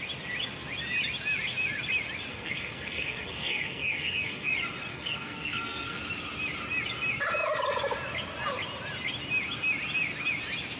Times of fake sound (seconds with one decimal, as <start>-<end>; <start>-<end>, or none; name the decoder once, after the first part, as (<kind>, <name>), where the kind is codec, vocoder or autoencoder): 2.3-4.5 (codec, SNAC); 4.9-6.0